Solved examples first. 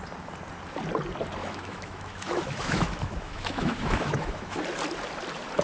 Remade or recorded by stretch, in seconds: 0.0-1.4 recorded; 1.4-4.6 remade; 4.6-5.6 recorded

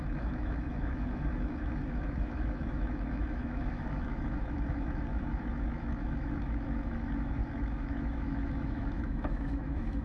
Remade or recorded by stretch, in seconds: 0.0-10.0 remade